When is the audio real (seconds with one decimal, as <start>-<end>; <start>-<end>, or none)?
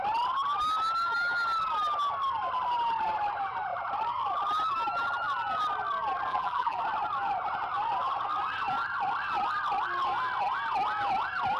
0.0-6.3; 6.8-11.6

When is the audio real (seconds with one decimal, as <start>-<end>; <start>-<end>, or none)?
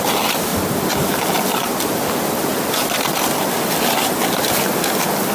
0.0-5.3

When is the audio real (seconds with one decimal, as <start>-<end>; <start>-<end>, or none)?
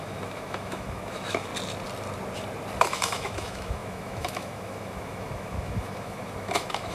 1.5-2.8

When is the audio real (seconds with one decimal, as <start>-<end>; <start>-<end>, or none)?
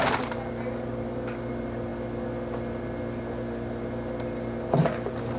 0.0-5.4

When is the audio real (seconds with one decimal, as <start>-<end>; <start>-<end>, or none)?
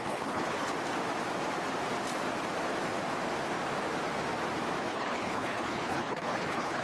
0.7-4.8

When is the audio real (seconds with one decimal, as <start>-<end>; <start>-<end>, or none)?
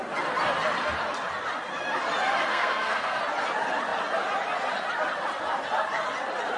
0.0-2.5; 3.2-6.6